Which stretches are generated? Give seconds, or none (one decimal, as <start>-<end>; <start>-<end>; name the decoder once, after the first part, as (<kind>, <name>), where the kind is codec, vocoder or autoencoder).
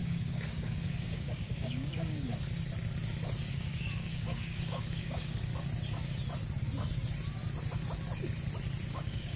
0.0-2.3 (codec, DAC); 3.5-5.5; 8.9-9.4